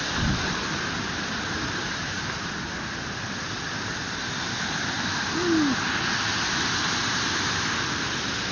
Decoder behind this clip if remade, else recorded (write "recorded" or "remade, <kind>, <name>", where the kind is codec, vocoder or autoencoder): recorded